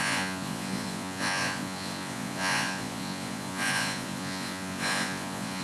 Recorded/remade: remade